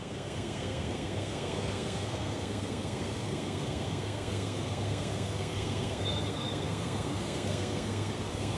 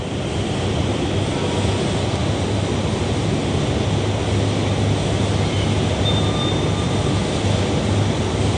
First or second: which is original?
second